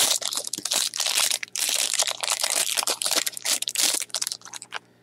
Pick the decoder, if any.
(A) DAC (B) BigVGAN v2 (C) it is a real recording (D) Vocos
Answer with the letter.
B